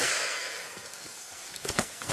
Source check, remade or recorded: remade